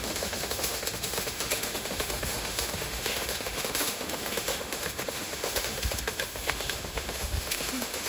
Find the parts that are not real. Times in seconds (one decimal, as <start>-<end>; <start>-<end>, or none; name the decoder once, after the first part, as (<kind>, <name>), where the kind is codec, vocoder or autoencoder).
0.0-8.1 (autoencoder, DAC-VAE)